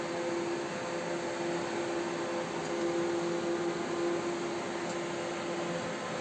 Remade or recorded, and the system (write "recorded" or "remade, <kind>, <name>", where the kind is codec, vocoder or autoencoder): recorded